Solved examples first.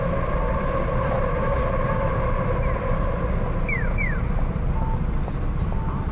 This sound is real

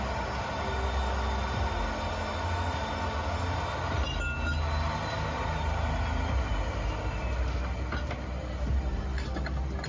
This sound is real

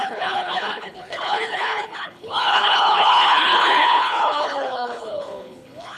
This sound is fake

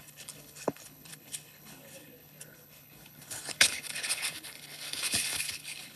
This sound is fake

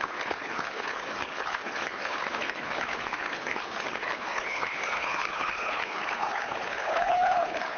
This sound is fake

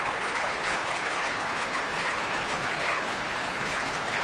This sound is fake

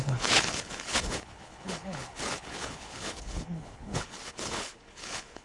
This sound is fake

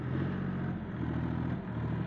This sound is real